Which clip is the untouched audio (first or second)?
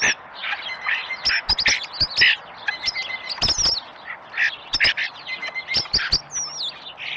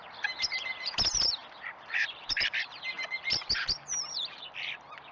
first